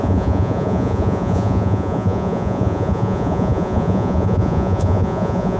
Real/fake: fake